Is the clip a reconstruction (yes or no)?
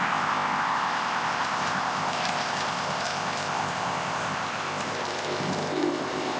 yes